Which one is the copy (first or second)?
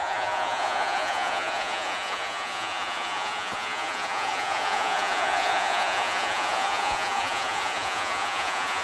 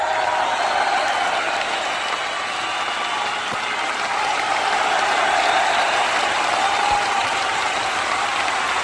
first